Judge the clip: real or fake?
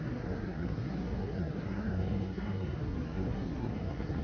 fake